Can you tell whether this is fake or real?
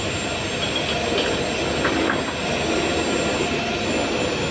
real